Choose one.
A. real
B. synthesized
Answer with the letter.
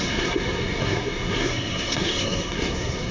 B